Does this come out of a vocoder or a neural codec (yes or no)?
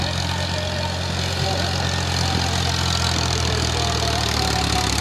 no